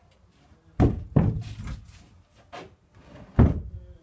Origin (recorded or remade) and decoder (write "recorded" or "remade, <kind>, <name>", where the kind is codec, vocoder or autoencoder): recorded